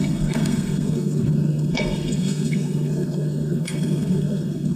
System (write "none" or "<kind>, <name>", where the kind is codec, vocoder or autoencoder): codec, SNAC